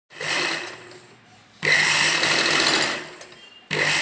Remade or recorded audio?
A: recorded